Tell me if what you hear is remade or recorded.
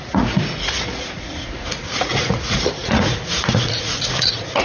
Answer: remade